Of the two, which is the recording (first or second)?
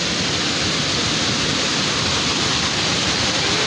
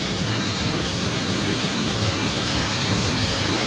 first